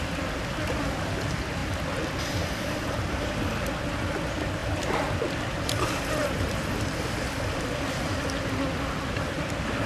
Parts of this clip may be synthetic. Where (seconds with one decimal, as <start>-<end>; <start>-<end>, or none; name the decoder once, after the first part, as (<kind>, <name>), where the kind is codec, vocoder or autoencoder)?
none